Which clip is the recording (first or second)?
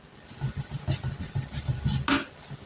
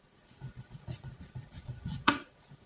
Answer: first